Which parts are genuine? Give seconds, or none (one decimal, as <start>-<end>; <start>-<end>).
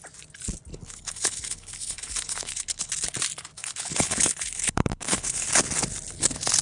0.0-0.7; 2.9-3.6; 5.5-6.6